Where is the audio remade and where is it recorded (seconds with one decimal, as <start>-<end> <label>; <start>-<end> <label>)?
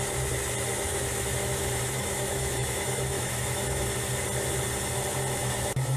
0.0-0.9 recorded; 0.9-3.8 remade; 3.8-5.4 recorded; 5.4-6.0 remade